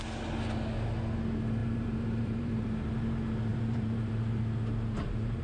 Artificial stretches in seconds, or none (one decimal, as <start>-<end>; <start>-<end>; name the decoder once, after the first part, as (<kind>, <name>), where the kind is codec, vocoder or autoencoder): 1.6-2.9 (vocoder, BigVGAN v2); 3.5-4.4